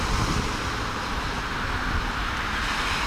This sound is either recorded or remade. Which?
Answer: recorded